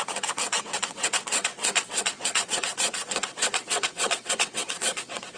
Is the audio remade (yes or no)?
yes